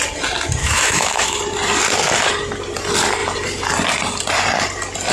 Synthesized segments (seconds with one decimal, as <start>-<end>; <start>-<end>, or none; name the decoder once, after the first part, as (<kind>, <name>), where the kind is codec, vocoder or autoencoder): 0.6-1.4 (autoencoder, DAC-VAE)

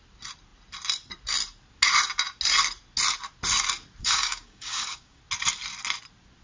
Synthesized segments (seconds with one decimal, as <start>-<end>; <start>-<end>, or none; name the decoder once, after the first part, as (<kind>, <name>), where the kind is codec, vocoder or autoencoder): 4.0-5.2 (codec, DAC)

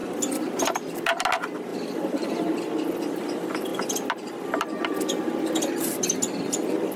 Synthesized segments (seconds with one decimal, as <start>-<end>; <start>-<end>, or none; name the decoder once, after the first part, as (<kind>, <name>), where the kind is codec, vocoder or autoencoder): 0.0-0.5 (vocoder, BigVGAN v2); 1.7-2.6

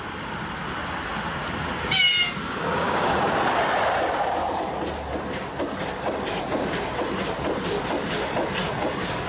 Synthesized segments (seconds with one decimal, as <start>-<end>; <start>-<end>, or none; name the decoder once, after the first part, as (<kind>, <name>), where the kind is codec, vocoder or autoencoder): 2.4-3.2 (codec, DAC)

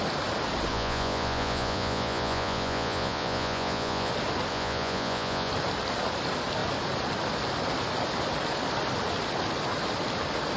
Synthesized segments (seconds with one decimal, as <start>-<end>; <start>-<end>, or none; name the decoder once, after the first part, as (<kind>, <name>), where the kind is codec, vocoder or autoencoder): 0.7-4.1 (vocoder, Vocos); 4.5-5.5